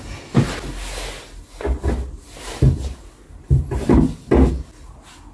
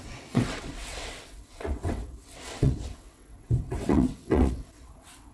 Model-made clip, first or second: second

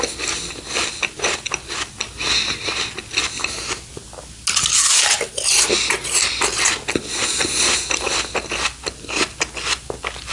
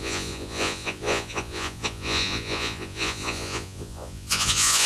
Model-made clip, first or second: second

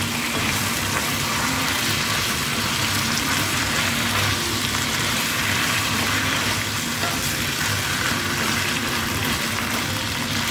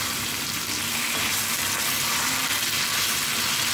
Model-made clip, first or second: first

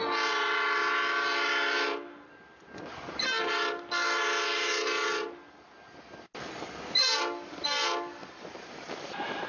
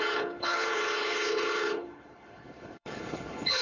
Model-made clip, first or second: second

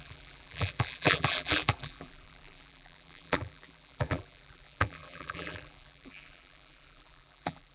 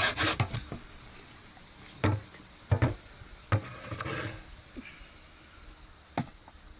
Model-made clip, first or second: first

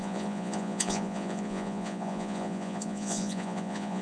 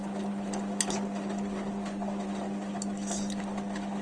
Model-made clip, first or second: first